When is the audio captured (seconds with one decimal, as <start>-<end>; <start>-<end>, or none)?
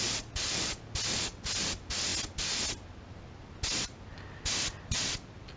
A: 0.0-5.6